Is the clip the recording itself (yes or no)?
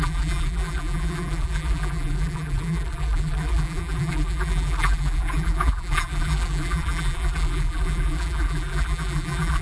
no